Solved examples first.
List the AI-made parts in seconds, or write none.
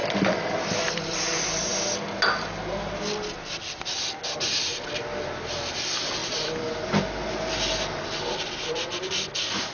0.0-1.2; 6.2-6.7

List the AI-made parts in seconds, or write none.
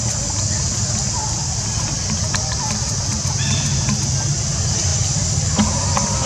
1.4-2.3; 4.9-6.3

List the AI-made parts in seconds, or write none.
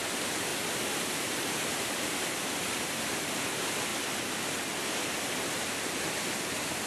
0.0-3.9